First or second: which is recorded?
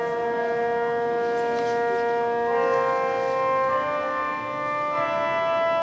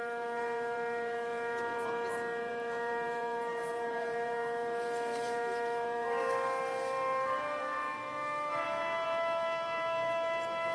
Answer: first